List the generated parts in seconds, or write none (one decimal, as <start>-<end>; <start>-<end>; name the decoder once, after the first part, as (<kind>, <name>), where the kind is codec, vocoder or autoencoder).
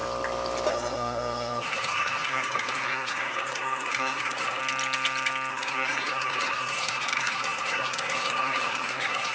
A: 0.7-4.6 (codec, SNAC); 5.5-9.3